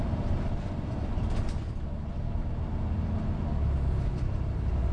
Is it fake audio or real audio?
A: real